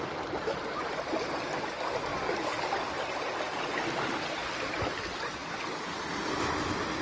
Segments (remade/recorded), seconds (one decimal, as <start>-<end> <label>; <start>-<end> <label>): 0.0-7.0 recorded